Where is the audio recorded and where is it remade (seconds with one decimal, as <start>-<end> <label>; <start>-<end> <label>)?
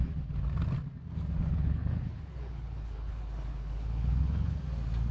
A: 0.0-1.5 recorded; 1.5-4.6 remade; 4.6-5.1 recorded